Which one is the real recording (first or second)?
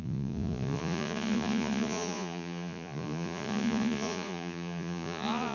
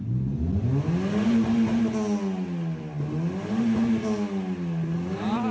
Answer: second